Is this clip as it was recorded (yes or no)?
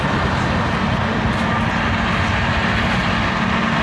yes